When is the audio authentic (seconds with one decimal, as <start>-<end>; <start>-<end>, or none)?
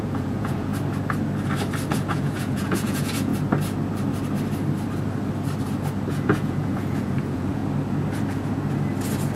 0.7-1.9; 3.3-6.1; 7.6-9.4